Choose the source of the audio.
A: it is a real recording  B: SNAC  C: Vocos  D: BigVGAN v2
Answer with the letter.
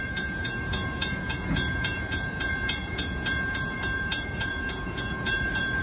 C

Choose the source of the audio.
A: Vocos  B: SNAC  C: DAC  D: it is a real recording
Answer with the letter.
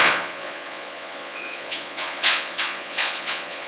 A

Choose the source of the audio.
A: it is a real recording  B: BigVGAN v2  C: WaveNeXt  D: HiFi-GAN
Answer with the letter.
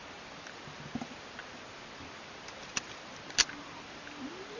A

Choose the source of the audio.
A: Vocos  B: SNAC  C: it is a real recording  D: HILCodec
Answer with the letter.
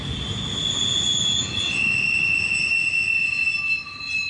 C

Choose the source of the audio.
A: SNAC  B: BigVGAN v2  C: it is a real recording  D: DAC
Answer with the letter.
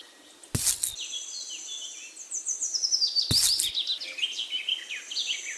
C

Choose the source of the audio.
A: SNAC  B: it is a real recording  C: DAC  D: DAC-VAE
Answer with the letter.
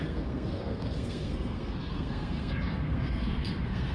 A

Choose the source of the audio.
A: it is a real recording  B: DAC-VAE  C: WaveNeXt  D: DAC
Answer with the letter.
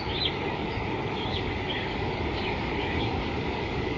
D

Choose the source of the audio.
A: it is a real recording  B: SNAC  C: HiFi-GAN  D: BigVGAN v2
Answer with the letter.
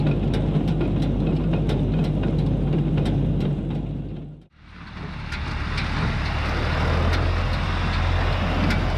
A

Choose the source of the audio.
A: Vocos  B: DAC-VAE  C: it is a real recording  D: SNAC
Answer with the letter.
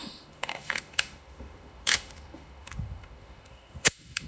B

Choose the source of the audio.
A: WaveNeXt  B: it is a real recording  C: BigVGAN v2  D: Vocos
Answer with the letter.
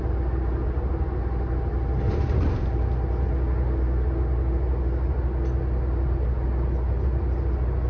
B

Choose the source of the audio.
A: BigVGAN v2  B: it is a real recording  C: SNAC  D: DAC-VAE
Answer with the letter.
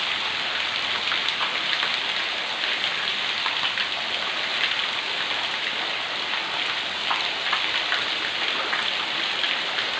B